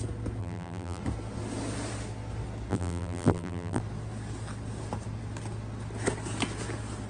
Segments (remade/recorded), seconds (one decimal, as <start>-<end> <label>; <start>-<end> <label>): 0.0-0.4 recorded; 0.4-1.0 remade; 1.0-2.7 recorded; 2.7-3.8 remade; 3.8-7.1 recorded